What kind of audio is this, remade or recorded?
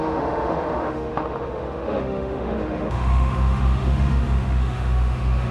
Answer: remade